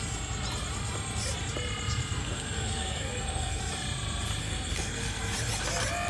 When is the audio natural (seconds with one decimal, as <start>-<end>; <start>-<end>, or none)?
0.0-2.2; 3.6-4.4; 5.2-6.1